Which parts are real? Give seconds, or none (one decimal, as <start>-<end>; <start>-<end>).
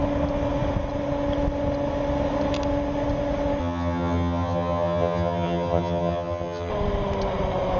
0.0-3.6; 6.7-7.8